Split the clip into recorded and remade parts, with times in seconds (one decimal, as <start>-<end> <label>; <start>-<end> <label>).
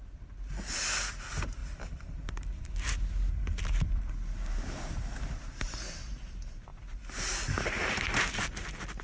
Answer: 0.0-1.6 recorded; 1.6-4.1 remade; 4.1-9.0 recorded